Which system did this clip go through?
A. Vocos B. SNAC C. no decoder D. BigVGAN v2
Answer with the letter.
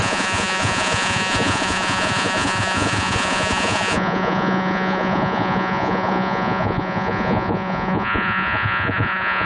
A